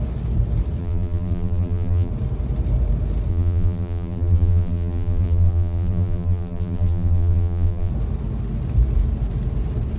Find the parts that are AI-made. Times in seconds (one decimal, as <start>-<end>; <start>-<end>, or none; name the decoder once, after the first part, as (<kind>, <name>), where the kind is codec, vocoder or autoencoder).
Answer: 0.8-2.1 (vocoder, BigVGAN v2); 3.3-7.9